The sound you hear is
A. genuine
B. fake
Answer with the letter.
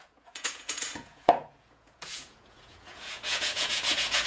B